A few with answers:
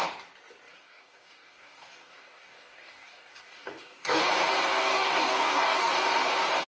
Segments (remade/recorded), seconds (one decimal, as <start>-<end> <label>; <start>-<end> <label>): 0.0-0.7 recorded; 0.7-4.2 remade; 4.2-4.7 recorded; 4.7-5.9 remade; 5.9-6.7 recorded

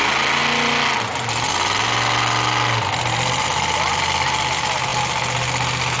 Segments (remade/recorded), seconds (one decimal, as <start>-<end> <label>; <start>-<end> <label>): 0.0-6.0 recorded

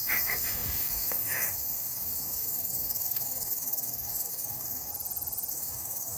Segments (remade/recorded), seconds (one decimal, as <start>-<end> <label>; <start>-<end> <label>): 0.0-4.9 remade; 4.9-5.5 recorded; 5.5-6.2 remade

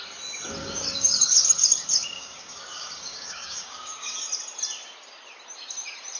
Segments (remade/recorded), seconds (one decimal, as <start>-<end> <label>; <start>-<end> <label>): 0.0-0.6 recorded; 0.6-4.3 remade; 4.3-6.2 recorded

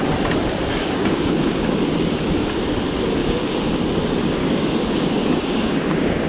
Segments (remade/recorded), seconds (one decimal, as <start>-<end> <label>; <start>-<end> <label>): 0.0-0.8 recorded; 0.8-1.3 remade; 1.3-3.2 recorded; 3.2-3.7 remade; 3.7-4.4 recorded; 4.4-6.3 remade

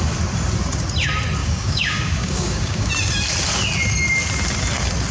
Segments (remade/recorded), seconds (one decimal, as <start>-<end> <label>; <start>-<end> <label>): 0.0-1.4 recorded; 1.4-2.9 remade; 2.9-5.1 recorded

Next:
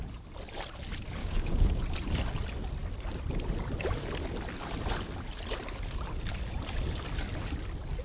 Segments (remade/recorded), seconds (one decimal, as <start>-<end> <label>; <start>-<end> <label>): 0.0-1.2 recorded; 1.2-1.8 remade; 1.8-8.0 recorded